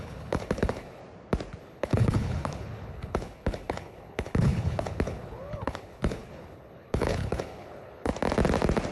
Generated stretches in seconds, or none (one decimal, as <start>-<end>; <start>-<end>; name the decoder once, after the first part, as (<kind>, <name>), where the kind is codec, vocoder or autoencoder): 0.0-1.0 (codec, HILCodec); 1.6-8.1